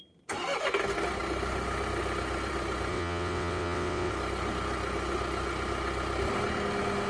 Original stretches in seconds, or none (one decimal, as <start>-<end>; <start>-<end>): 0.0-2.9; 4.1-7.1